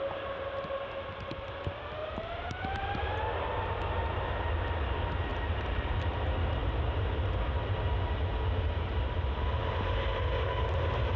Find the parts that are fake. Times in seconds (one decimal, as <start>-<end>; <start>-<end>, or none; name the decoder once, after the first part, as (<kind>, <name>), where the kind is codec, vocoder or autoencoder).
2.0-3.2 (vocoder, BigVGAN v2); 5.3-6.0; 6.6-7.3